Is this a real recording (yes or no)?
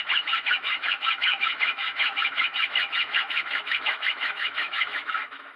no